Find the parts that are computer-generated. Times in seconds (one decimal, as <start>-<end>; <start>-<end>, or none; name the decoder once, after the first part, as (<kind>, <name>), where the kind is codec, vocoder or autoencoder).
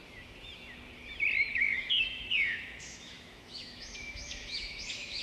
1.5-5.2 (autoencoder, DAC-VAE)